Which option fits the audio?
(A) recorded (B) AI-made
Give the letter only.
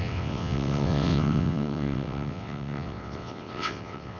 B